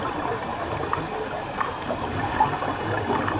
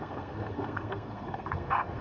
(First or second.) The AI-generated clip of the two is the second